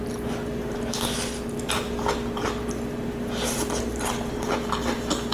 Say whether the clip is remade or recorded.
recorded